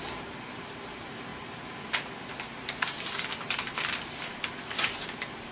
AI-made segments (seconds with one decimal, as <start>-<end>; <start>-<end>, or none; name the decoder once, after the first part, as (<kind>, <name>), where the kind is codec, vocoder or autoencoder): 0.0-1.3 (vocoder, BigVGAN v2); 4.6-5.5